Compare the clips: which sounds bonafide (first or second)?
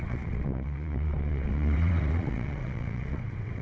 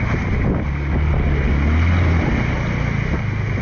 second